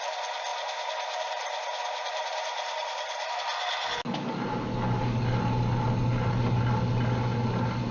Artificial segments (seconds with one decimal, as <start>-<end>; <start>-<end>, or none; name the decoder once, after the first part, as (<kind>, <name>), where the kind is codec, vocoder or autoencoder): 0.5-3.3 (vocoder, BigVGAN v2)

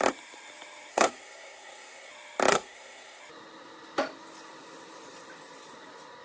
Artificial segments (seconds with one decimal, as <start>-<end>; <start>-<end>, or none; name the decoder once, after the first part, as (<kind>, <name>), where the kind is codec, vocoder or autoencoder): 0.9-2.1 (codec, SNAC); 2.5-3.2